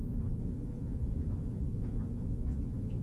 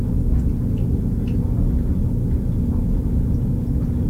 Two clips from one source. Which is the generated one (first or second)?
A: first